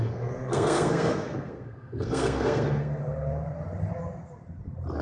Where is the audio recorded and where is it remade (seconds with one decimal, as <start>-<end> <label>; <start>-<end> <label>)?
0.0-3.0 remade; 3.0-5.0 recorded